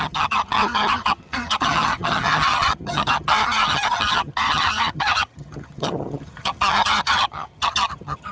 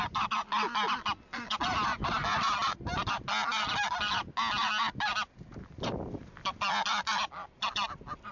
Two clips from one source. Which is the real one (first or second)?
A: second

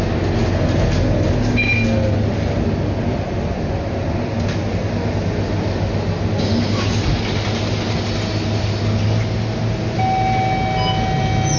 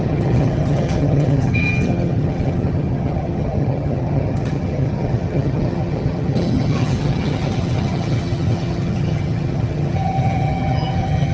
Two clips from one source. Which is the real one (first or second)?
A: first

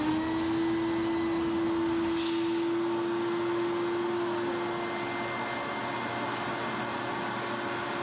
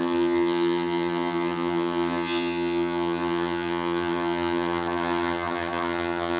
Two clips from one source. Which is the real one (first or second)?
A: first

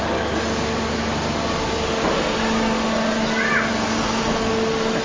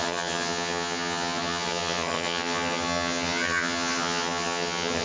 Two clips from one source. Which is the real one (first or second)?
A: first